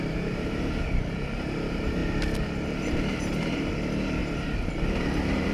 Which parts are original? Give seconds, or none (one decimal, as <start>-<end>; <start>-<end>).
2.0-2.8